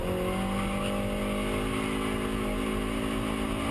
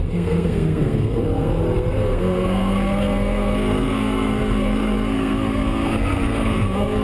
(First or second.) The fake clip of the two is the second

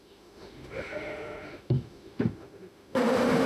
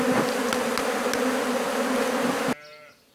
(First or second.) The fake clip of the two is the first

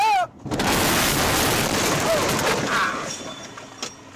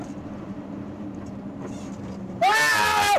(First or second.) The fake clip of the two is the second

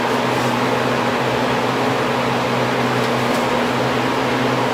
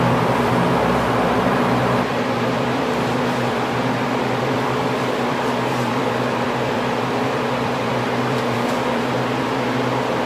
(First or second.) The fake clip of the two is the second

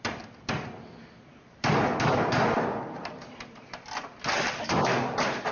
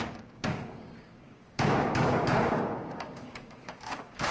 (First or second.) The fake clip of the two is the second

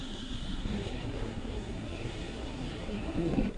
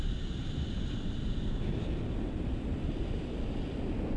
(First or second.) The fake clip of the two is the first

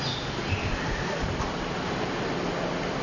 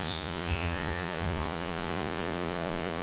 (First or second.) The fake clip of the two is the second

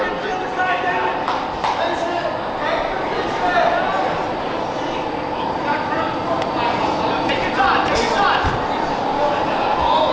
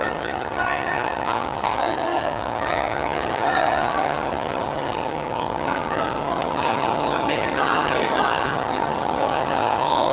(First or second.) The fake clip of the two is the second